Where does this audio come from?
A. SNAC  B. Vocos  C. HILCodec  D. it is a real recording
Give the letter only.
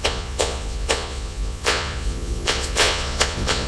B